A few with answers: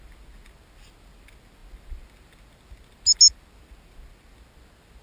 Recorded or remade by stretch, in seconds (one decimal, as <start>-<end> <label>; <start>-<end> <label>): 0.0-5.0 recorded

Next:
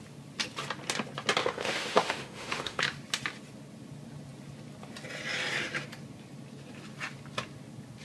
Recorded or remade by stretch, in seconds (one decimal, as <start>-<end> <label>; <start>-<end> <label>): 0.0-1.4 recorded; 1.4-2.8 remade; 2.8-8.0 recorded

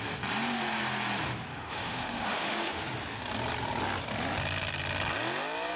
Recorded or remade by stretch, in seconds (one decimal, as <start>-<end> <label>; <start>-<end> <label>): 0.0-1.5 recorded; 1.5-2.8 remade; 2.8-5.8 recorded

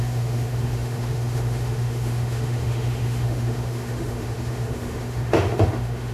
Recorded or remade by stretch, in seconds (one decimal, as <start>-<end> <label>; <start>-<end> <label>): 0.0-6.1 remade

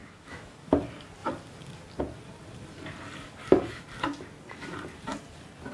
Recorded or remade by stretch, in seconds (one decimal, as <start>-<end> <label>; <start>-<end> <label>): 0.0-0.7 remade; 0.7-5.7 recorded